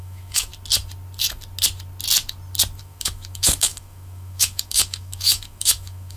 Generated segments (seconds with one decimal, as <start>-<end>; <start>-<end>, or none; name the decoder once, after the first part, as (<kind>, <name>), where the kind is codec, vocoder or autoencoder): 0.0-0.5 (autoencoder, DAC-VAE); 2.8-6.2